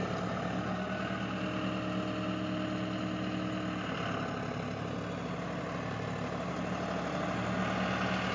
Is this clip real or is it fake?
real